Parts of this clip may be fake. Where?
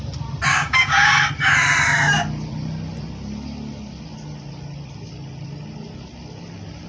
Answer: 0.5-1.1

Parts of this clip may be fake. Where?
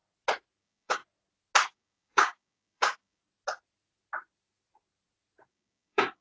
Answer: 0.6-1.0; 1.7-3.2; 5.5-6.2